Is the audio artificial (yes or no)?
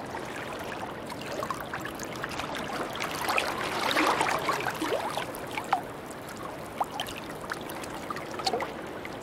no